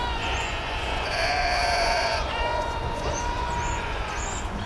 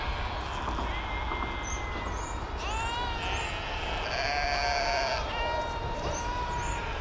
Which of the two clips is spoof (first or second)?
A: first